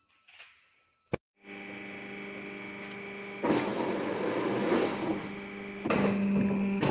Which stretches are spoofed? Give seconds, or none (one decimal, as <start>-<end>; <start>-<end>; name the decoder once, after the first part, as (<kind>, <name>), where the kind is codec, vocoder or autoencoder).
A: none